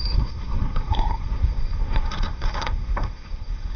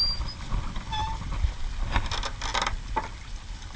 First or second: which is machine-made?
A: first